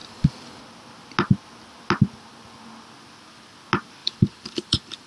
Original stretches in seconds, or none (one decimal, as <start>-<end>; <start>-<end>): 0.6-4.0